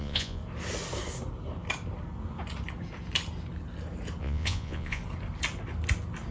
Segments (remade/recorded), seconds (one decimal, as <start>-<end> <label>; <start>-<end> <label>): 0.0-0.4 remade; 0.4-4.2 recorded; 4.2-5.0 remade; 5.0-6.3 recorded